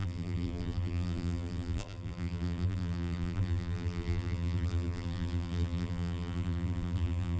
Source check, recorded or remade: remade